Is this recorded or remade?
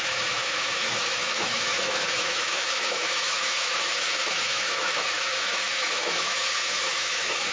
remade